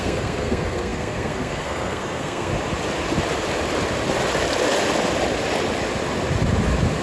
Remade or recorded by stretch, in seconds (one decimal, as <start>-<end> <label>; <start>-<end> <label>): 0.0-2.5 remade; 2.5-7.0 recorded